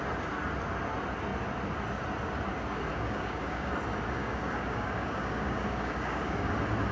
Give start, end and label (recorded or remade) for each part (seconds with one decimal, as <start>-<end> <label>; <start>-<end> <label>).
0.0-2.9 recorded; 2.9-3.7 remade; 3.7-4.2 recorded; 4.2-6.5 remade; 6.5-6.9 recorded